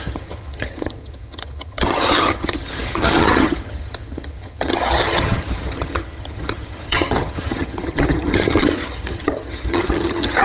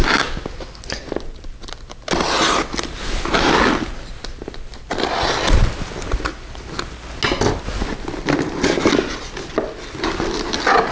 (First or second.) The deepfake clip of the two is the first